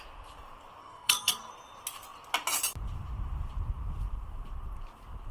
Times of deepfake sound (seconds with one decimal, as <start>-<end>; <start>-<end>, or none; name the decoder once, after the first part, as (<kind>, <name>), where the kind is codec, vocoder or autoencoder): 0.8-1.5 (codec, SNAC)

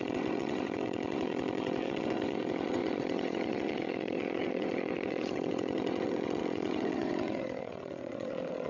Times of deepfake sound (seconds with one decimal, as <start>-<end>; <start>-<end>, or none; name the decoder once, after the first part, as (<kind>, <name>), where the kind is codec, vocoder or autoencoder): 0.0-8.7 (vocoder, WaveNeXt)